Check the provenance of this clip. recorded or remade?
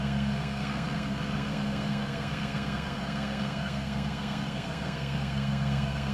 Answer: remade